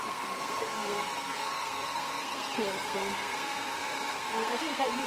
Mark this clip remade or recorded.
remade